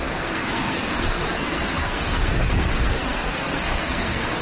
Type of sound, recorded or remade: remade